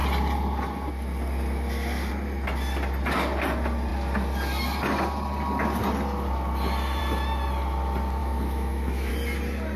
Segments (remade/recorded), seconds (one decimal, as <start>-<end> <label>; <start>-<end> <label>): 0.0-8.2 recorded; 8.2-9.1 remade; 9.1-9.8 recorded